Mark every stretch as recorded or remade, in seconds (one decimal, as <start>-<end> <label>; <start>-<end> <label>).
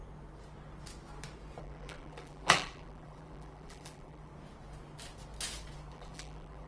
0.0-1.6 recorded; 1.6-4.3 remade; 4.3-5.9 recorded; 5.9-6.7 remade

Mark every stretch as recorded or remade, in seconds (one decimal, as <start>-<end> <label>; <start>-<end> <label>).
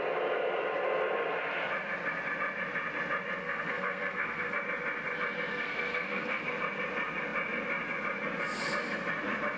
0.0-3.4 recorded; 3.4-4.6 remade; 4.6-5.5 recorded; 5.5-6.4 remade; 6.4-9.6 recorded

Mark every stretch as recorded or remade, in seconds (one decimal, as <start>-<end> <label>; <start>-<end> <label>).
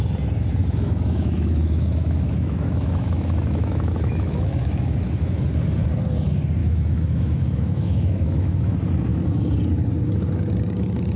0.0-0.6 recorded; 0.6-5.4 remade; 5.4-6.6 recorded; 6.6-8.7 remade; 8.7-11.2 recorded